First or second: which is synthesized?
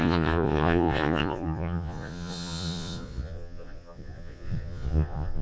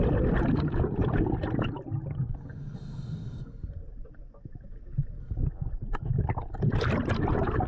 first